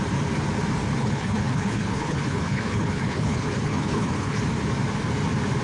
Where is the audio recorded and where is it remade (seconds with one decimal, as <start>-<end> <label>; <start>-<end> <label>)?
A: 0.0-1.0 recorded; 1.0-4.4 remade; 4.4-5.6 recorded